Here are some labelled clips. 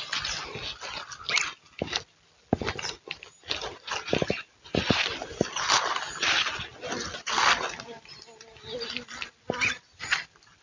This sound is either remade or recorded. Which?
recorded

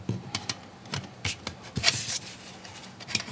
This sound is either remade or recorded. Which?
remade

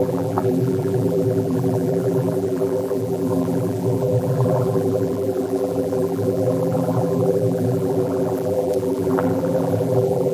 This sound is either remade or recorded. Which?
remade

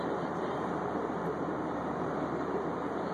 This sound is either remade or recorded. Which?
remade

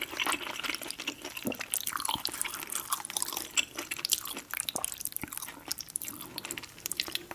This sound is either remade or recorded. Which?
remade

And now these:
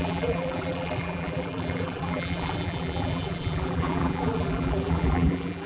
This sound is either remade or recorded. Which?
remade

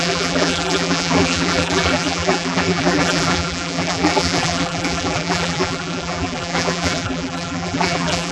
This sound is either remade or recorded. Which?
remade